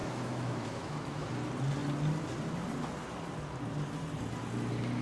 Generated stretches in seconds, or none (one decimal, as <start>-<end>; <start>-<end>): 0.0-1.3